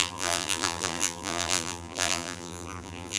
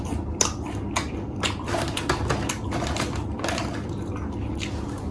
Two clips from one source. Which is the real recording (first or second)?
second